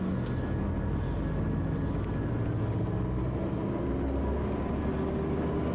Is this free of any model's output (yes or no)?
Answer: yes